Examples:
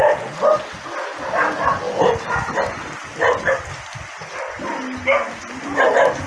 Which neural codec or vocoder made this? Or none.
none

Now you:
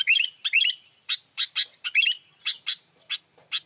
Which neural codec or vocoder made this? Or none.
vocoder, BigVGAN v2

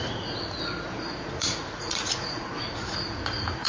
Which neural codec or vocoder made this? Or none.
vocoder, Vocos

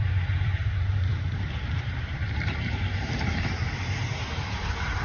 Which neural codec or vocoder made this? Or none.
vocoder, BigVGAN v2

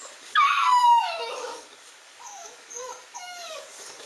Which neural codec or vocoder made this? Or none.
codec, DAC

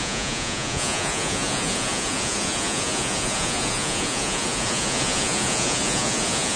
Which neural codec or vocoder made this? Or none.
vocoder, Vocos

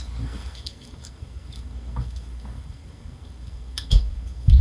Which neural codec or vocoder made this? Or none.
codec, SNAC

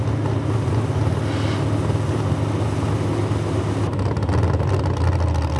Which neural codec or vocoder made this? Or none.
none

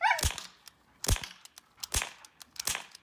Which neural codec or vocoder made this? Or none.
none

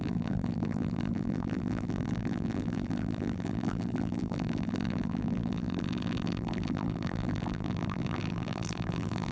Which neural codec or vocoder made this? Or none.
vocoder, BigVGAN v2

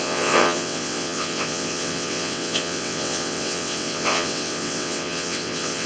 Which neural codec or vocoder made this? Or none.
vocoder, WaveNeXt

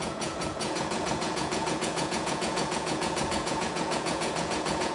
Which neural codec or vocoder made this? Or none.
vocoder, Vocos